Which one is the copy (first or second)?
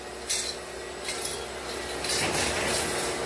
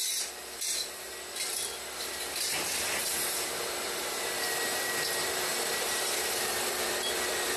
second